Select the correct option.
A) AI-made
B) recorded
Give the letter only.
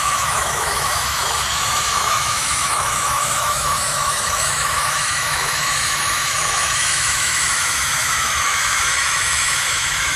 A